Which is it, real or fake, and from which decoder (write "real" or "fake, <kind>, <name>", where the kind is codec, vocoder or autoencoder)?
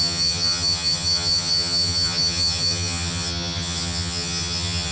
fake, vocoder, HiFi-GAN